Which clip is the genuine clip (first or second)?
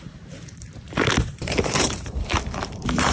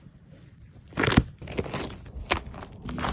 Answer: second